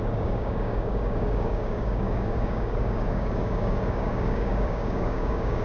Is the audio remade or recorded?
remade